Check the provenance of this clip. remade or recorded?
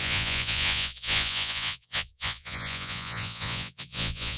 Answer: remade